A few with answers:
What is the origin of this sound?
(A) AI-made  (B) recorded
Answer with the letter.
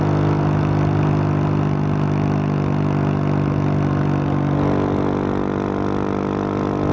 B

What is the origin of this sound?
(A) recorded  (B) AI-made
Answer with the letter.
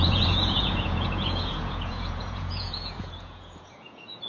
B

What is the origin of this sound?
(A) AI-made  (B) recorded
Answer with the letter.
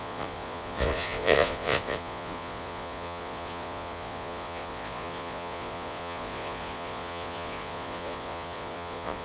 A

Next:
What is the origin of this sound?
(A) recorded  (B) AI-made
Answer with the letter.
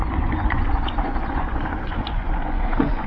B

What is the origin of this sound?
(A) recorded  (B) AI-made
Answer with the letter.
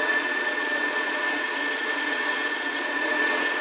B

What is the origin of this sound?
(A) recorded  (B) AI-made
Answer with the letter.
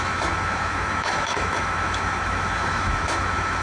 B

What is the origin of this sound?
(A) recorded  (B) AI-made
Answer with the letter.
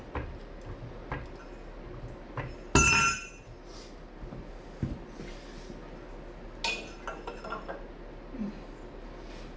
A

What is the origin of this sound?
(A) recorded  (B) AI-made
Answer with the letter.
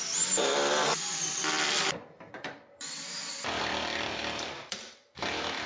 B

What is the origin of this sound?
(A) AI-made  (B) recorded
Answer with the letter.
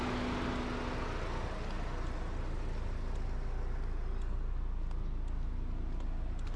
B